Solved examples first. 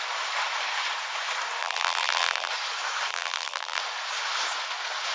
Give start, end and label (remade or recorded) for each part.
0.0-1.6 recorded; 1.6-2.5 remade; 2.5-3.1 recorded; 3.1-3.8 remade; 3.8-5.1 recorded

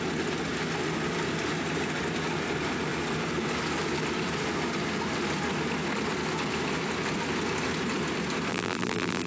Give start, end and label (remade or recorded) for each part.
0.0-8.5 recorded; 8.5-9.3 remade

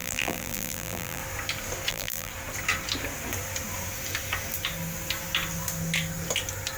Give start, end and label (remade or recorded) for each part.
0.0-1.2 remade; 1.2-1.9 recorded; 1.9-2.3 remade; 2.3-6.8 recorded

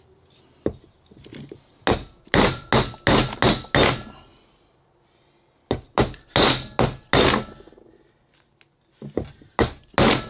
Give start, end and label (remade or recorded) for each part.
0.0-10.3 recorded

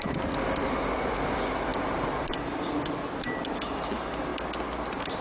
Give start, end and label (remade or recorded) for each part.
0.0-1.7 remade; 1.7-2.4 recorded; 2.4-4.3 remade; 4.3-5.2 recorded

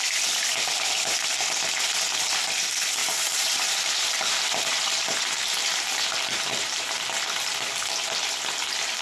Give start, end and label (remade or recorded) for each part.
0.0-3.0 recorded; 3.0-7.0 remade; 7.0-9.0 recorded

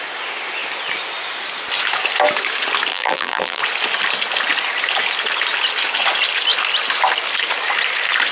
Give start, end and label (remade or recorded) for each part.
0.0-2.9 recorded; 2.9-3.6 remade; 3.6-8.3 recorded

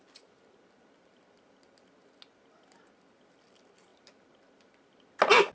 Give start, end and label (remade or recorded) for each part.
0.0-5.5 recorded